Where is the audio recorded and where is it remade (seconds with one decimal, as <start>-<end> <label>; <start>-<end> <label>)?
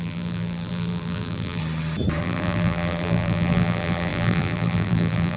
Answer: 0.0-1.6 remade; 1.6-2.2 recorded; 2.2-5.4 remade